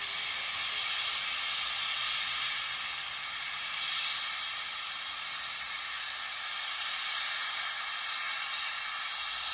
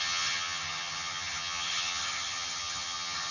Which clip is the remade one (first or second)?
second